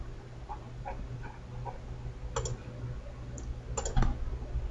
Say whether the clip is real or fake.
real